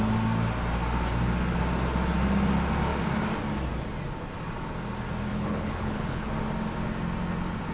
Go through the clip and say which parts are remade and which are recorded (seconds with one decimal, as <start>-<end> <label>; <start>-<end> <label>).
0.0-5.3 recorded; 5.3-6.3 remade; 6.3-7.7 recorded